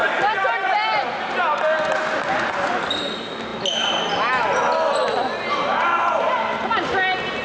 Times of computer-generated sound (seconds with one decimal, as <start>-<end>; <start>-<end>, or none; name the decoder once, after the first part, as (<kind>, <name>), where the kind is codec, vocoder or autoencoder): none